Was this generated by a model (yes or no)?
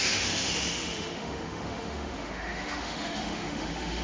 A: yes